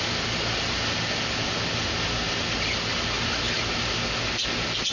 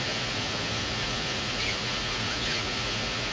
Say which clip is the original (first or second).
first